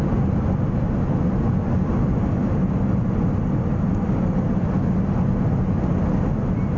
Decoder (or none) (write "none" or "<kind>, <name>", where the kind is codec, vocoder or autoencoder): none